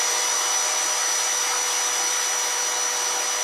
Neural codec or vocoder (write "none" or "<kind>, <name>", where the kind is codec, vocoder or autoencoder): none